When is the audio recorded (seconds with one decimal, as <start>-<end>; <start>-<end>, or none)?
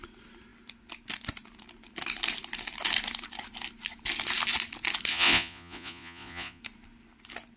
0.0-5.1; 6.6-7.6